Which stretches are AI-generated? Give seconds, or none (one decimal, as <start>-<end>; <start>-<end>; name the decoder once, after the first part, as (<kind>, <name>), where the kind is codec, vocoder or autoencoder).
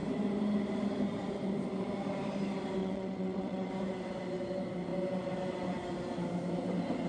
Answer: 2.8-3.7 (vocoder, WaveNeXt)